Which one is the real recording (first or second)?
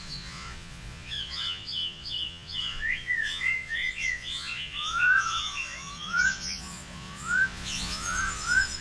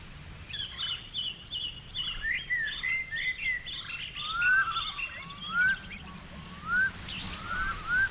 second